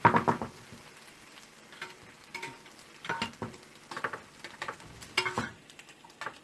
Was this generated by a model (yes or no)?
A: no